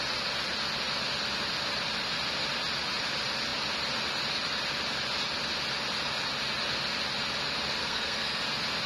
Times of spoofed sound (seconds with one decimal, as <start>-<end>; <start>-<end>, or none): 7.8-8.4